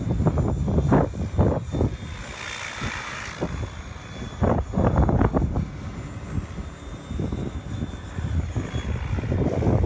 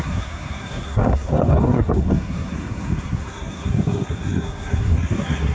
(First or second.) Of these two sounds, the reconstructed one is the second